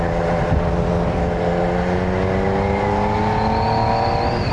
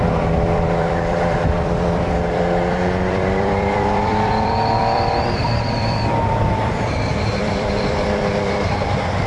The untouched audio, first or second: first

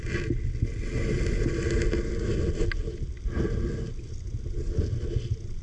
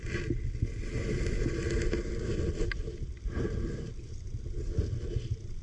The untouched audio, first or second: first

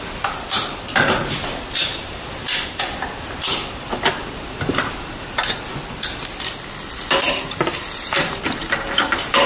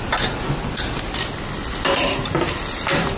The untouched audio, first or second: second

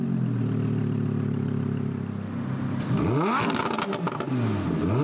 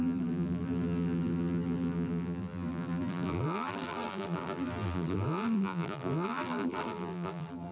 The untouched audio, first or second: first